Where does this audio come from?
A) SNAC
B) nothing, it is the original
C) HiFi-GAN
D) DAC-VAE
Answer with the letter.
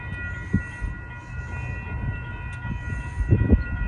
B